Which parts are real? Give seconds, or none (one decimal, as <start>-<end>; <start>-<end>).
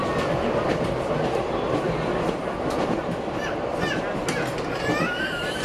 4.2-5.1